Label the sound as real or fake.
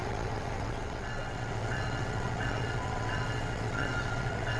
fake